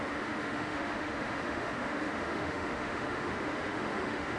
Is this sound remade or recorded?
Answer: remade